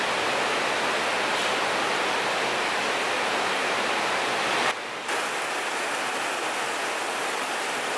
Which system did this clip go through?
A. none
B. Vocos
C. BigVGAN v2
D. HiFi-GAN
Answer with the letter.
A